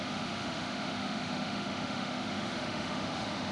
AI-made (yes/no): yes